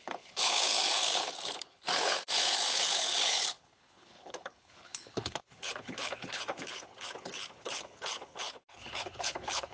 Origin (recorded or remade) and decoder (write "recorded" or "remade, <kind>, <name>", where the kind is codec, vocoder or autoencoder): remade, codec, HILCodec